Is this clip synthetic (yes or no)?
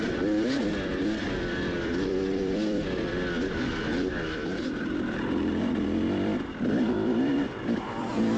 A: yes